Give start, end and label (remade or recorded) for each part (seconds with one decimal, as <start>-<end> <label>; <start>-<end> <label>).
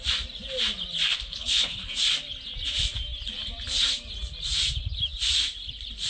0.0-1.1 recorded; 1.1-1.9 remade; 1.9-6.1 recorded